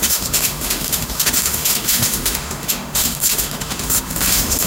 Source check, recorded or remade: remade